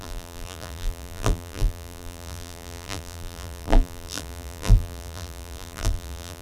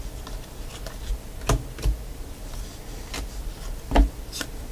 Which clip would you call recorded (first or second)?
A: second